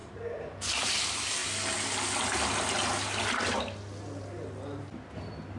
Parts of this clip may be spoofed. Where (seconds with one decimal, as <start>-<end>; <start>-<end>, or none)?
0.0-0.9